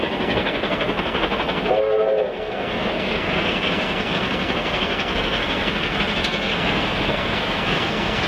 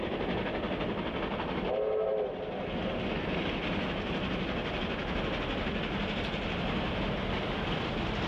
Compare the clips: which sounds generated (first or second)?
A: first